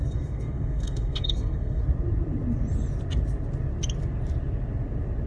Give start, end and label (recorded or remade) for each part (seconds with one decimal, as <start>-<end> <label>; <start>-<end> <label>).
0.0-1.8 remade; 1.8-5.3 recorded